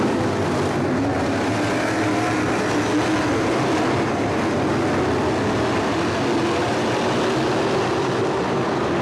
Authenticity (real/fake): real